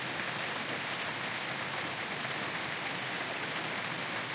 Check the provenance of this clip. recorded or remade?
recorded